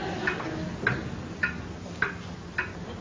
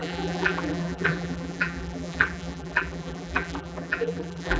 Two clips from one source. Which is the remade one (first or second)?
second